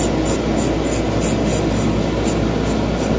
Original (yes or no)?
yes